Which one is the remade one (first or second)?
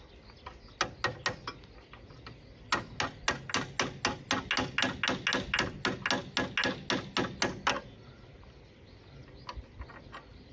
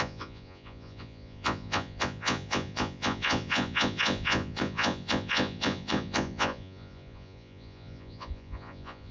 second